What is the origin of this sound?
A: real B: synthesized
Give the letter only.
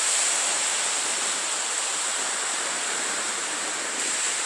B